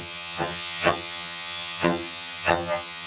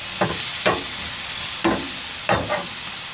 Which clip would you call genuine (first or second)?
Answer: second